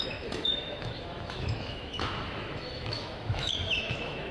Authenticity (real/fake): fake